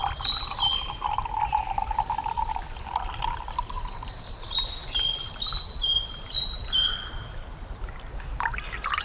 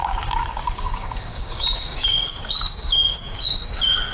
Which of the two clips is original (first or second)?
first